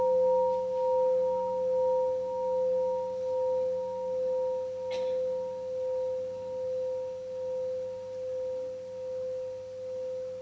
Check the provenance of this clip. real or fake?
real